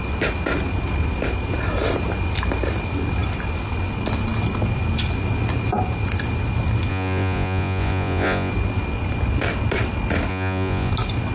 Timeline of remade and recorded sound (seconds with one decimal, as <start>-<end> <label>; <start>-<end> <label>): 0.0-6.9 recorded; 6.9-8.5 remade; 8.5-10.3 recorded; 10.3-10.9 remade; 10.9-11.3 recorded